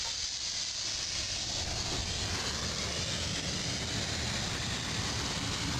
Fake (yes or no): no